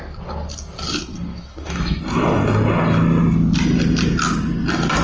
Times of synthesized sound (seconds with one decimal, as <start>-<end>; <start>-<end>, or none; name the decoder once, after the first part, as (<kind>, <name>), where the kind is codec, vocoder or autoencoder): 1.3-2.0 (autoencoder, DAC-VAE)